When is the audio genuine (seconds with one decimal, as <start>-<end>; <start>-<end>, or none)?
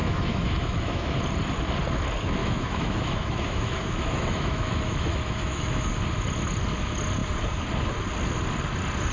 1.2-2.4; 5.9-9.1